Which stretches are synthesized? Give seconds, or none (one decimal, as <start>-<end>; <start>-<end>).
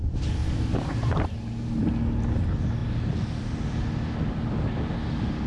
0.4-1.8